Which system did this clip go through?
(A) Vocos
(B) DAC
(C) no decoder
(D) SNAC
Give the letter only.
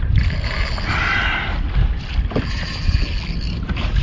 C